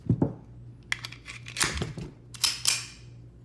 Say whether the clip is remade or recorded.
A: recorded